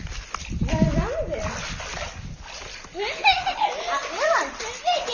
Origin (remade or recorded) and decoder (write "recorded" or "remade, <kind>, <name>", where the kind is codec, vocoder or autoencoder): recorded